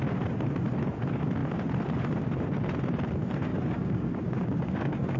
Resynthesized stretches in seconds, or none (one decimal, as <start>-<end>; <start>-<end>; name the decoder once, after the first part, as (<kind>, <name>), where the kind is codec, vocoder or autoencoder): 3.5-5.2 (codec, DAC)